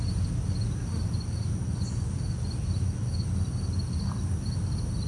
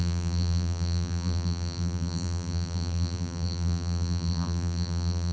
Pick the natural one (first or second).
first